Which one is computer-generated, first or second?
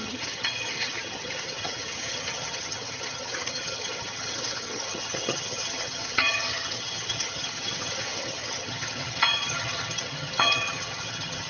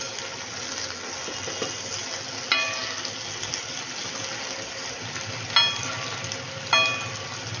first